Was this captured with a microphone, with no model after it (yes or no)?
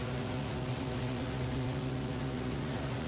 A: no